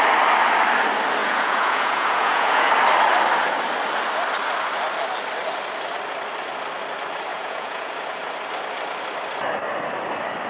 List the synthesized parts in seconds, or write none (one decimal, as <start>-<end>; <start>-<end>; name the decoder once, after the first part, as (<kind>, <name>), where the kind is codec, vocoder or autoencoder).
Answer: 1.2-2.7 (vocoder, Vocos); 7.3-7.9